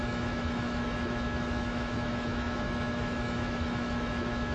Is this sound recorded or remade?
remade